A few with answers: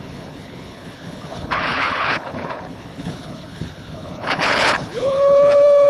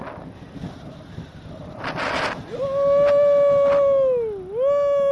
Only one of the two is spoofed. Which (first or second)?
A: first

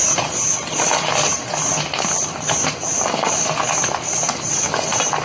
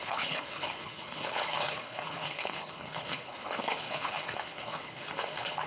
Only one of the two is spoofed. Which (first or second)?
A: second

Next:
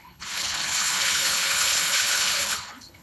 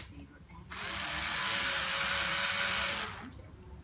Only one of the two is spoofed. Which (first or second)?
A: first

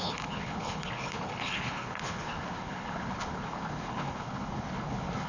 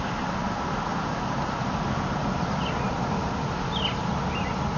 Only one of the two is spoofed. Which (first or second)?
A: first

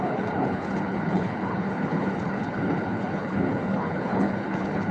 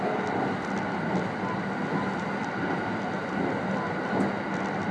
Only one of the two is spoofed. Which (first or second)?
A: first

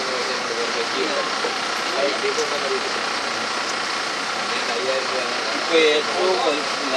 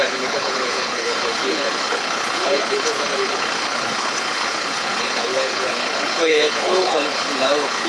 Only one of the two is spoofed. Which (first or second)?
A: second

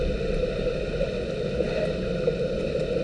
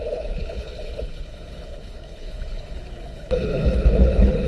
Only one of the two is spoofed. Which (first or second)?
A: second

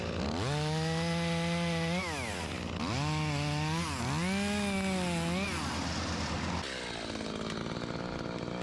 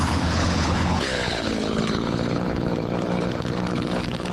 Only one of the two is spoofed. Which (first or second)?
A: second